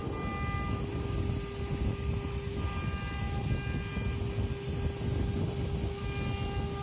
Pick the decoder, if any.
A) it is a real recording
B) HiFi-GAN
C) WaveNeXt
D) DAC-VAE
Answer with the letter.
A